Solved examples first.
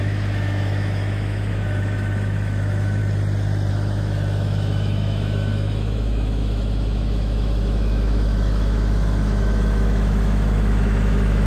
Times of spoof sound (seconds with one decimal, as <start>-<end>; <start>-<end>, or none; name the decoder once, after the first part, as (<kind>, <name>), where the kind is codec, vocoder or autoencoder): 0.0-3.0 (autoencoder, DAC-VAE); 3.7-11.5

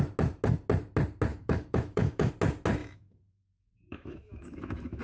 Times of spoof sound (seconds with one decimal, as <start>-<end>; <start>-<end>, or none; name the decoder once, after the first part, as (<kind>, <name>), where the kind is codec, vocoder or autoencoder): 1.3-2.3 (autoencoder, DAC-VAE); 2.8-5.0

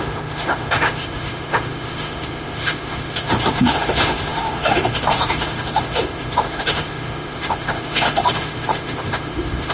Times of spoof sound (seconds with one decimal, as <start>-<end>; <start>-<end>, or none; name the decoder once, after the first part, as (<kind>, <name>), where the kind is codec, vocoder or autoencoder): 0.0-9.7 (autoencoder, DAC-VAE)

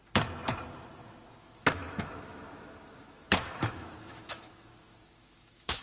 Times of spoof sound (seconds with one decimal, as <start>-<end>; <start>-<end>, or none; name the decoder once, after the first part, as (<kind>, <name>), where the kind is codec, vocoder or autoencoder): 1.4-5.8 (autoencoder, DAC-VAE)